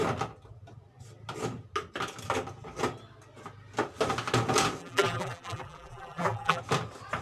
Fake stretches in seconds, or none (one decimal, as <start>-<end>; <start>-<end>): 4.8-6.6